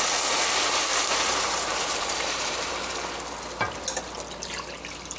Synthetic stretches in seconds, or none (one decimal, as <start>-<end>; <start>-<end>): 0.9-2.7